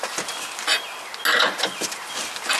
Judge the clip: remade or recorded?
recorded